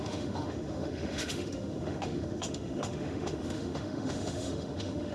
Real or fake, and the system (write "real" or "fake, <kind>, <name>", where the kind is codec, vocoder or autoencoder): fake, autoencoder, DAC-VAE